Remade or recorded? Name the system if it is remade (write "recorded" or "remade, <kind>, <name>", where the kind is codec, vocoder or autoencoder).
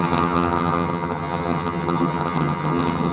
remade, vocoder, HiFi-GAN